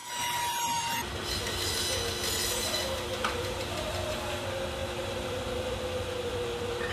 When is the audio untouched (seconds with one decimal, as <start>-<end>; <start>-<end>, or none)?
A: 0.0-6.9